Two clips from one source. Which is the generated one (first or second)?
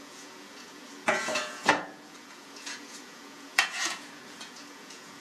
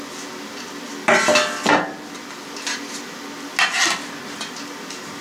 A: first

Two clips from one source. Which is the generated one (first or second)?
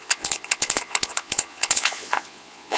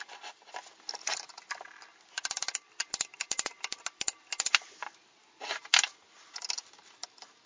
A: first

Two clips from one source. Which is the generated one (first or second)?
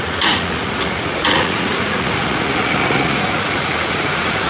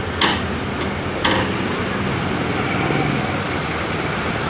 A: first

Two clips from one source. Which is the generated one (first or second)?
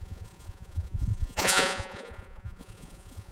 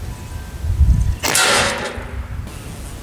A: first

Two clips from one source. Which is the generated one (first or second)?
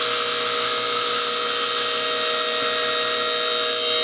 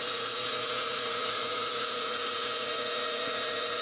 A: second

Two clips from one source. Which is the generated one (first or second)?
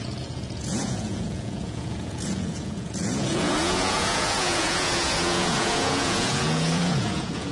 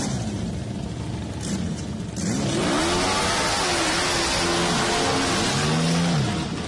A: first